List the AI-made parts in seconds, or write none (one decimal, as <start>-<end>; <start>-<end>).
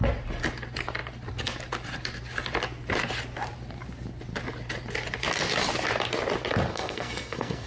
6.7-7.7